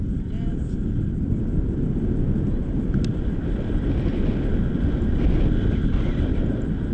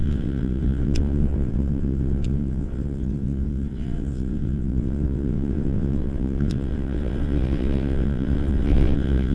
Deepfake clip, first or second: second